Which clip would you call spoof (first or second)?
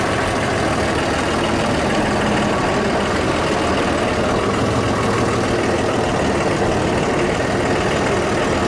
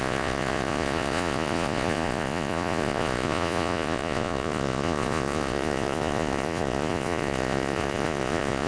second